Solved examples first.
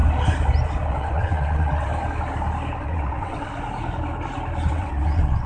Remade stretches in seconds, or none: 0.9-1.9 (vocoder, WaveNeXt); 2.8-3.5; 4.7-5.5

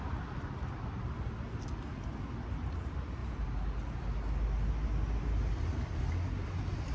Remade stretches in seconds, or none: none